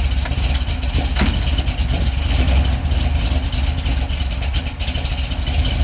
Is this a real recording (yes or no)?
yes